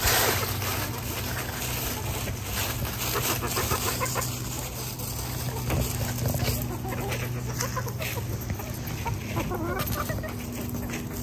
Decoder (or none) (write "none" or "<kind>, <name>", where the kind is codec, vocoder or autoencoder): none